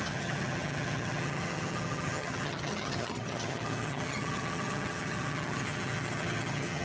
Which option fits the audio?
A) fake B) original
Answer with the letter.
A